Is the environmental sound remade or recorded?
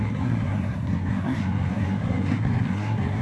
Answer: remade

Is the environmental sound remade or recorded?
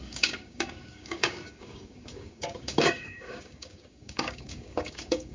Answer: remade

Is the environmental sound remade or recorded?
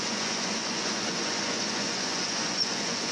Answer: remade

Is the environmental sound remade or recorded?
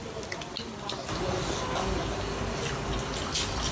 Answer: recorded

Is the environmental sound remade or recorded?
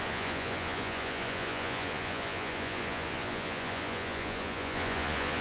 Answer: remade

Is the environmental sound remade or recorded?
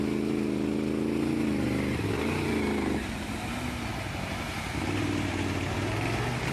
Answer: recorded